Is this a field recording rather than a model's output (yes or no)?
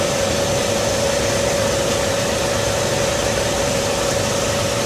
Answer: no